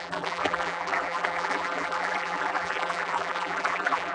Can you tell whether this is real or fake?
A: fake